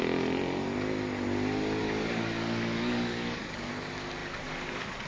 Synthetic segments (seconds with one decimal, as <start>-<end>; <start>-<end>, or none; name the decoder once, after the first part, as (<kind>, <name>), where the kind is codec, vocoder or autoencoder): 1.8-3.7 (codec, DAC)